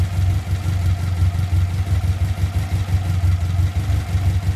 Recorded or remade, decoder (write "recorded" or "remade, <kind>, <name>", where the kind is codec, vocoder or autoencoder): recorded